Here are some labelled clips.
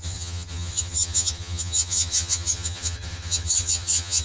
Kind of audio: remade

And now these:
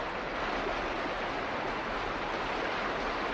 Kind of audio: recorded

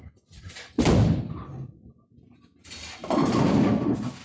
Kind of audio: recorded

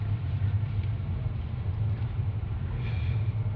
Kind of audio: remade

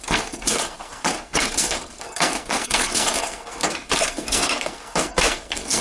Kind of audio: remade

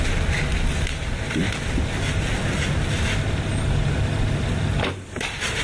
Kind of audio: recorded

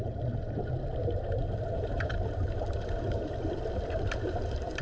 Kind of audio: remade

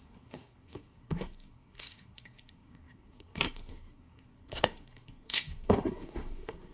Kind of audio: remade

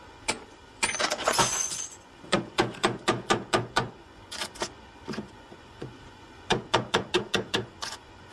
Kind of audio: remade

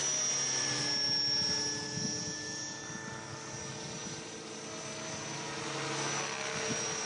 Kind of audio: recorded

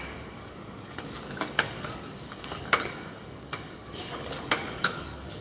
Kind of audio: remade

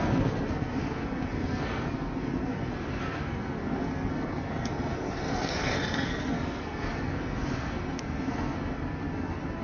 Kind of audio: remade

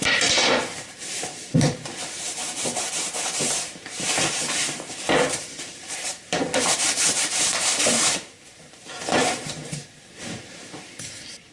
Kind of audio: remade